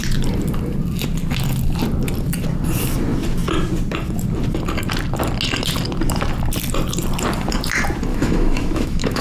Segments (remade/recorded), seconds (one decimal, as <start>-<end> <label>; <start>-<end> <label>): 0.0-8.1 recorded; 8.1-9.2 remade